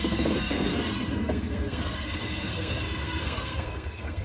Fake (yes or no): yes